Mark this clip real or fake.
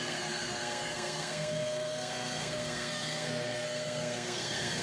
fake